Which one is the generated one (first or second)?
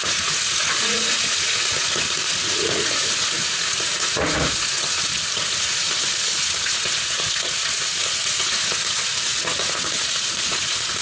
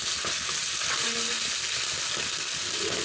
first